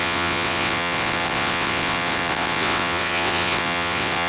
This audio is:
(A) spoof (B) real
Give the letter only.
A